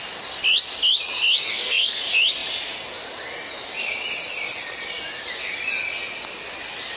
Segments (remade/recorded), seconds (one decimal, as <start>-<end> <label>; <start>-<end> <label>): 0.0-1.5 recorded; 1.5-2.0 remade; 2.0-7.0 recorded